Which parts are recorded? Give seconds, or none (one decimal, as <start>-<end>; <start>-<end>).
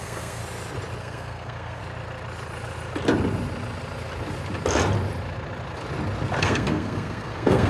0.4-1.0; 1.8-6.4